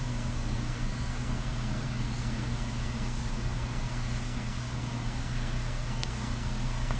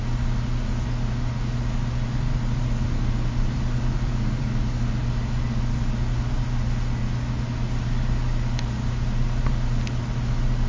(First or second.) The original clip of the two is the second